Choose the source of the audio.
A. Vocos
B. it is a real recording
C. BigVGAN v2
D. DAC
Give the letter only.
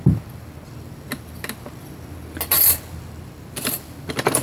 B